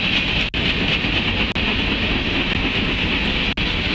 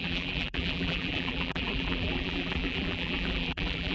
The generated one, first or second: second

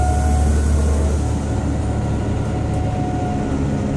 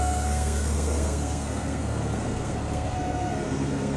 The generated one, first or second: second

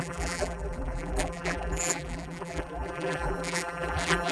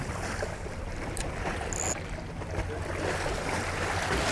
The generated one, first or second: first